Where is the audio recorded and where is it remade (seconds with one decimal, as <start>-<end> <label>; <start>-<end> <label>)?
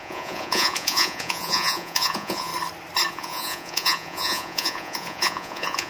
0.0-2.5 remade; 2.5-3.1 recorded; 3.1-5.9 remade